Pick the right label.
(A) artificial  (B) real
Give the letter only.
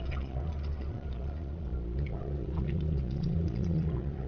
A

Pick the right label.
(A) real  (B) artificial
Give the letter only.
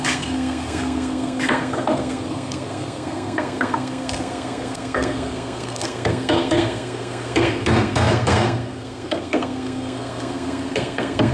B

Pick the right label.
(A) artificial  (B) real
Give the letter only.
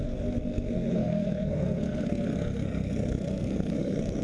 A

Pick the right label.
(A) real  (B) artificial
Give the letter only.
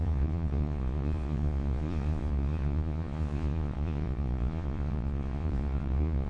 B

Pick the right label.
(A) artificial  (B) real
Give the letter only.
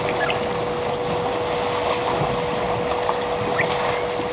B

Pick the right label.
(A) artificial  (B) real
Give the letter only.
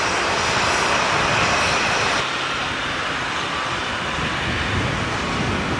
B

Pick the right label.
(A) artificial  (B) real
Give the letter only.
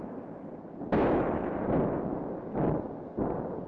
B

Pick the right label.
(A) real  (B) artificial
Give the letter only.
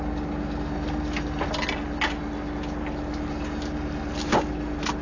A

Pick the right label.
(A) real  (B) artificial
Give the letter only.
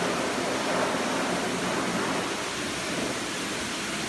A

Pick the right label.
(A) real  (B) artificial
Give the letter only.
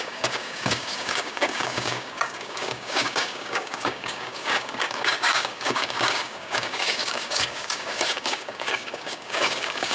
B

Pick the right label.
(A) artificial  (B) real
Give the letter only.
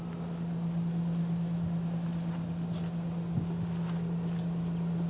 B